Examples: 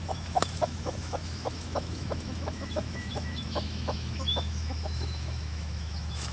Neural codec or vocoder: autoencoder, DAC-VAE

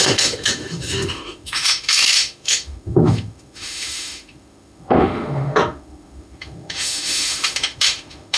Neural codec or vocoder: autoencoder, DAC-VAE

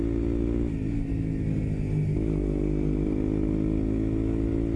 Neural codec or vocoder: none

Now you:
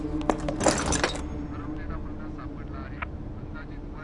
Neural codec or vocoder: none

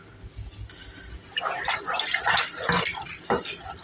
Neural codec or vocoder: none